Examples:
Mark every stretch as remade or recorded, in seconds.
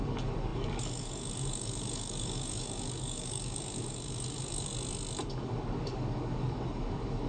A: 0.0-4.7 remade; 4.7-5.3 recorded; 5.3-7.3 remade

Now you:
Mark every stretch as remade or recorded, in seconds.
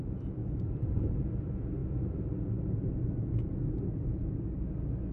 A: 0.0-0.4 recorded; 0.4-1.3 remade; 1.3-5.1 recorded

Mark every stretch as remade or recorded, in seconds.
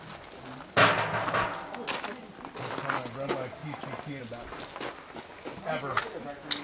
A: 0.0-6.6 recorded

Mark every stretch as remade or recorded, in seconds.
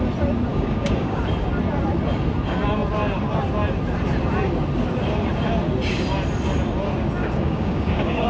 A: 0.0-0.5 recorded; 0.5-1.2 remade; 1.2-7.2 recorded; 7.2-8.3 remade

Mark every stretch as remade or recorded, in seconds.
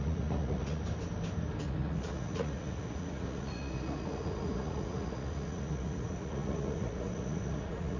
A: 0.0-0.8 remade; 0.8-1.6 recorded; 1.6-8.0 remade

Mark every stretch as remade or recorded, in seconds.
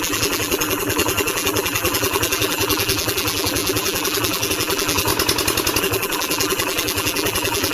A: 0.0-5.1 remade; 5.1-5.8 recorded; 5.8-7.7 remade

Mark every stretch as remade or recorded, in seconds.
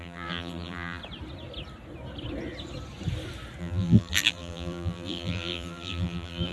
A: 0.0-1.0 remade; 1.0-3.6 recorded; 3.6-6.5 remade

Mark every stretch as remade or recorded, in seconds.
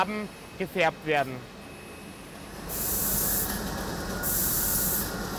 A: 0.0-5.4 recorded